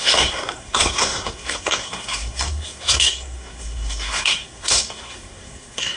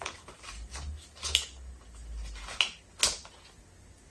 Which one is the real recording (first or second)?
second